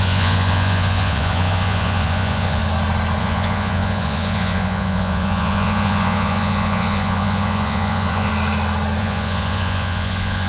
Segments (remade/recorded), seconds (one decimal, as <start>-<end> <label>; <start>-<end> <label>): 0.0-2.6 remade; 2.6-3.2 recorded; 3.2-8.3 remade; 8.3-9.0 recorded; 9.0-10.5 remade